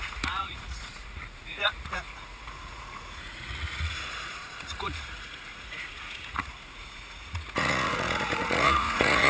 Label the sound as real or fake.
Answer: fake